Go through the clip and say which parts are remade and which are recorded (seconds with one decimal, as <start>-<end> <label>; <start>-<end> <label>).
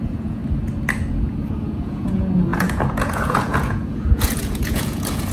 0.0-0.4 remade; 0.4-1.1 recorded; 1.1-5.3 remade